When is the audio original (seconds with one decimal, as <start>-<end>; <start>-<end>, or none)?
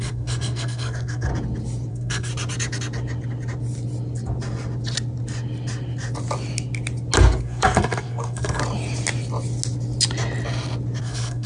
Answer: 1.3-1.9; 2.3-7.4; 8.6-11.0